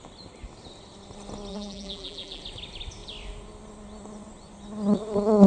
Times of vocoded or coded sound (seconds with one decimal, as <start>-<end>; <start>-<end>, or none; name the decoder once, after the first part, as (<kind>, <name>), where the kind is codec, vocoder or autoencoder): 1.5-2.4 (vocoder, BigVGAN v2)